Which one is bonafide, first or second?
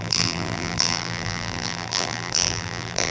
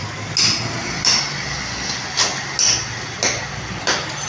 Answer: second